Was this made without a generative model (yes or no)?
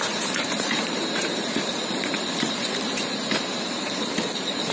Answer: no